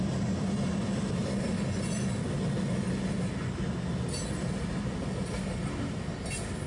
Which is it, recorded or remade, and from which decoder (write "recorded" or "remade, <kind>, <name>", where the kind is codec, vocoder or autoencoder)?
recorded